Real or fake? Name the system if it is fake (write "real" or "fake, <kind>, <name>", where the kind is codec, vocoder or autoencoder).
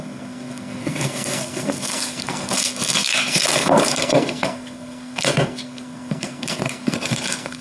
fake, codec, SNAC